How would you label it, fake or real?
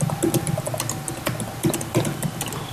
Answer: real